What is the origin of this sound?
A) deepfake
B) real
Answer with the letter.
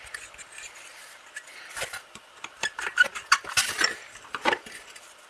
A